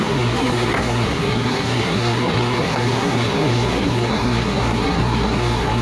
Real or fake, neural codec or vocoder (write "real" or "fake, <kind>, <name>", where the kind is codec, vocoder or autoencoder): fake, codec, SNAC